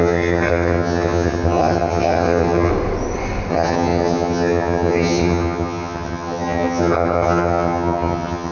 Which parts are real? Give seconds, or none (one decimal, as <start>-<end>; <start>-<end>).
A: 2.7-3.5